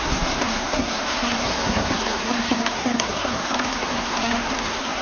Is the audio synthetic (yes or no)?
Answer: yes